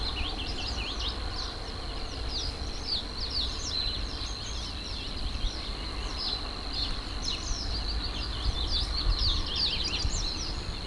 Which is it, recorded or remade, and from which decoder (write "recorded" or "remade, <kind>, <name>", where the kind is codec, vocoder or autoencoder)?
recorded